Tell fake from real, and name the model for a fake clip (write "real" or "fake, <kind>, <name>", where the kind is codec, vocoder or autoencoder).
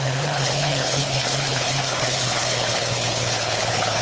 fake, codec, HILCodec